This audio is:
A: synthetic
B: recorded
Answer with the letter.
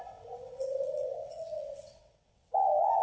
A